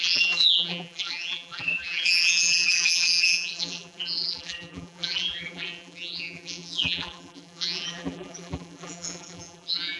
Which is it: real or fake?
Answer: fake